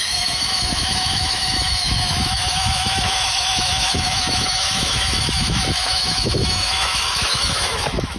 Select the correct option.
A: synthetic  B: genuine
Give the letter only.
A